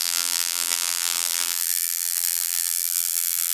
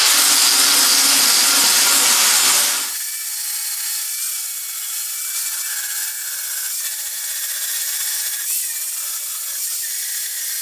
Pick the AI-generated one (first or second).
first